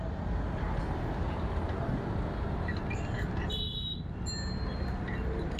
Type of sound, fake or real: real